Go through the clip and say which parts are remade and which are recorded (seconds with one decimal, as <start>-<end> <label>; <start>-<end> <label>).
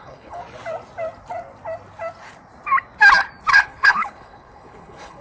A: 0.0-0.4 remade; 0.4-3.5 recorded; 3.5-5.2 remade